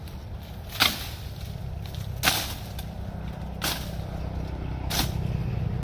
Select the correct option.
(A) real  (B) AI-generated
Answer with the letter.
A